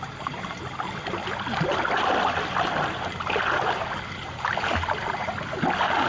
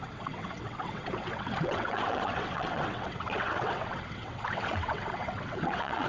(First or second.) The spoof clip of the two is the second